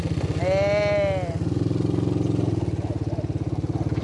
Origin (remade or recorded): recorded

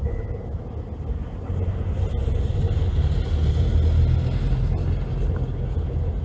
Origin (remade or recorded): recorded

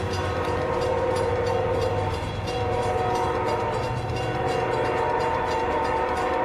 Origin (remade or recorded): remade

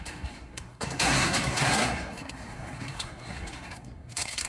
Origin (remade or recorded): remade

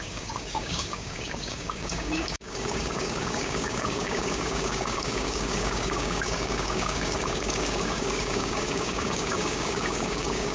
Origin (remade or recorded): remade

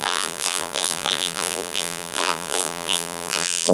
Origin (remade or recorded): remade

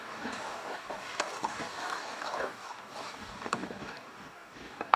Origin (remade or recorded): remade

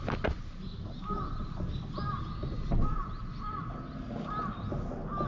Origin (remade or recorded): recorded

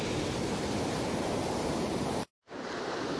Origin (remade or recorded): remade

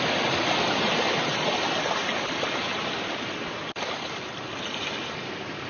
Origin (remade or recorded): recorded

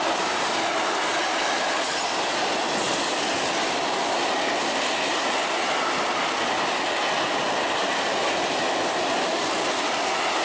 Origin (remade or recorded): recorded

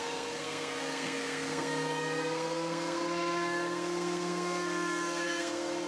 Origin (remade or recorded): remade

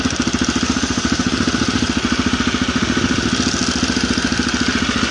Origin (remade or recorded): recorded